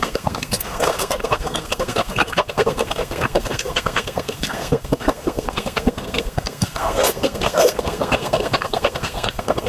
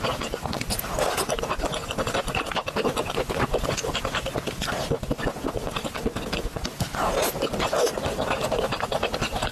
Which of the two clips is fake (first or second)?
first